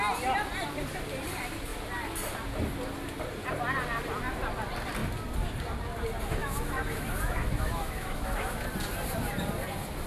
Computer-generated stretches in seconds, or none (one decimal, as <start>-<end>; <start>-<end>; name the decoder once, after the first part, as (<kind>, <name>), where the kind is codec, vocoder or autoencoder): 6.4-8.7 (autoencoder, DAC-VAE)